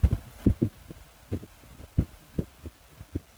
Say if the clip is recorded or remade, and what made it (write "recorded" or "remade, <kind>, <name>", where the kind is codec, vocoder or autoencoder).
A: recorded